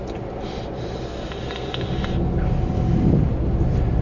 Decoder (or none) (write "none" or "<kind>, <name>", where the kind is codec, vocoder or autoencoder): none